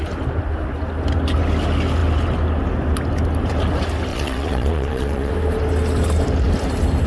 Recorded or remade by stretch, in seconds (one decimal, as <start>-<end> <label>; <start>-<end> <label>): 0.0-4.1 recorded; 4.1-5.3 remade; 5.3-7.1 recorded